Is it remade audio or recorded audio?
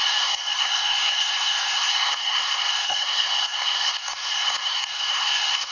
remade